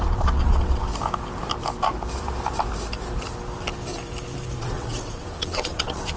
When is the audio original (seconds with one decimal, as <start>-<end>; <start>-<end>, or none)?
0.9-4.6